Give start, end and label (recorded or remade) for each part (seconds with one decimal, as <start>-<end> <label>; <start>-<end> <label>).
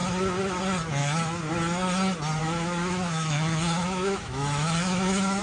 0.0-1.0 recorded; 1.0-1.5 remade; 1.5-2.4 recorded; 2.4-5.4 remade